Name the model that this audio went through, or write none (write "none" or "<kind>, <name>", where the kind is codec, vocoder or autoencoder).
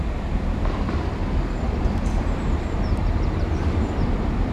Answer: vocoder, BigVGAN v2